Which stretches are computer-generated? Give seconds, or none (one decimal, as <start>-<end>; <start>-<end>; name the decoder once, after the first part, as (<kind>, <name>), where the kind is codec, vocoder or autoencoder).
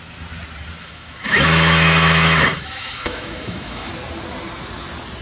0.8-3.9 (autoencoder, DAC-VAE)